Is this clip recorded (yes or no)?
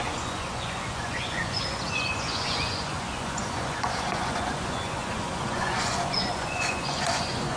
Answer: no